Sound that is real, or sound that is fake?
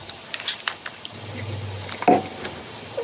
real